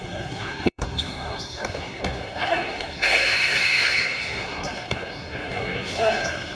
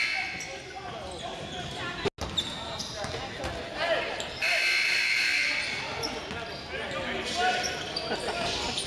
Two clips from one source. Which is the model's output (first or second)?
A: first